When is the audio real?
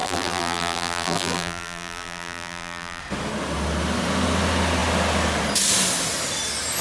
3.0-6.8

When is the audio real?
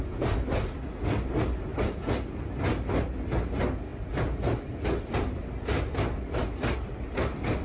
0.0-7.6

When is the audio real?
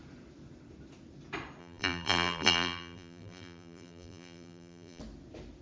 0.0-1.6; 5.0-5.6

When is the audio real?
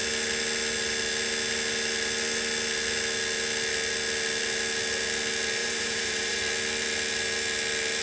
0.0-5.6; 6.4-8.0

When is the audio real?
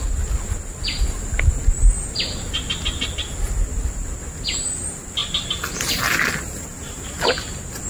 0.0-6.7; 7.3-7.9